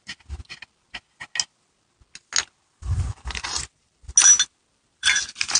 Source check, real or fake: real